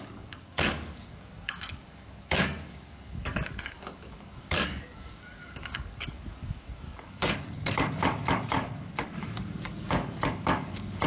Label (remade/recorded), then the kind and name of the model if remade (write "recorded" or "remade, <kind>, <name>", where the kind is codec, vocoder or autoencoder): remade, codec, DAC